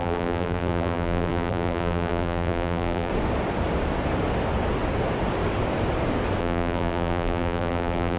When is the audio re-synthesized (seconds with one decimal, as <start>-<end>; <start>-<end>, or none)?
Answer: 0.0-3.1; 6.4-8.2